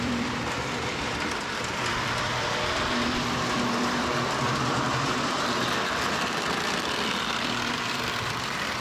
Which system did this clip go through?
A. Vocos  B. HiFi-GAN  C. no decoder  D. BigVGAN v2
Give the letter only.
D